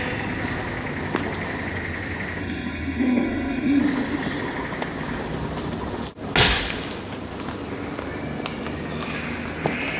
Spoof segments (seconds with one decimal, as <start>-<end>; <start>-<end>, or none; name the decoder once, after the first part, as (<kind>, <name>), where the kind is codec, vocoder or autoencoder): 2.4-3.8 (codec, SNAC)